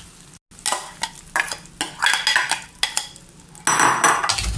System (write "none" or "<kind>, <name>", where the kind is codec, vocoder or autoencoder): none